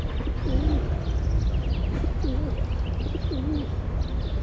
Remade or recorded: recorded